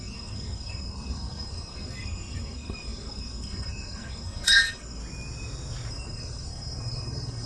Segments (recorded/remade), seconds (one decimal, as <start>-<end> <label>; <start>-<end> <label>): 0.0-5.0 remade; 5.0-5.9 recorded; 5.9-7.5 remade